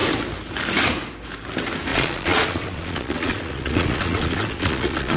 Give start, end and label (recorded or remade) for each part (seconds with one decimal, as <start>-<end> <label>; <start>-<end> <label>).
0.0-1.9 recorded; 1.9-5.2 remade